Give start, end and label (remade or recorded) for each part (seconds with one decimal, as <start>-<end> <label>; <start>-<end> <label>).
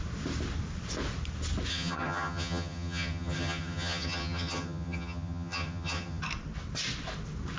0.0-1.7 recorded; 1.7-6.2 remade; 6.2-7.6 recorded